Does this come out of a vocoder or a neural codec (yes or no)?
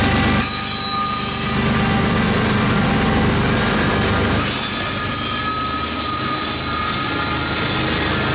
no